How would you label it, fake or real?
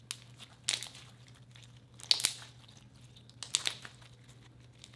real